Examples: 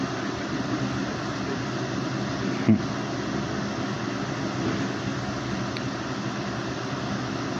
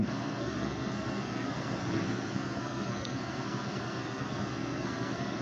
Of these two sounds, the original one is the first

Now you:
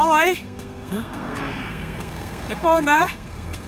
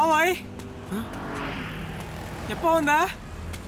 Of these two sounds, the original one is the second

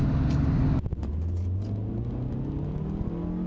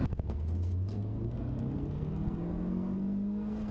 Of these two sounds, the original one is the first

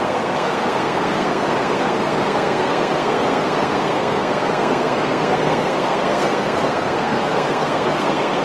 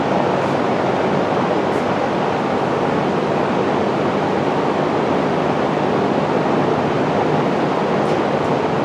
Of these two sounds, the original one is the second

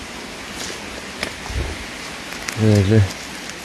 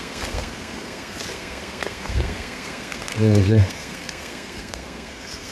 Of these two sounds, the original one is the first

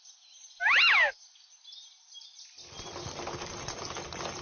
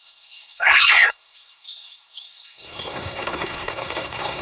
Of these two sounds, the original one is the first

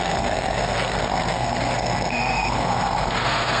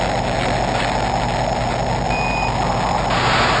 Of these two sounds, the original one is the second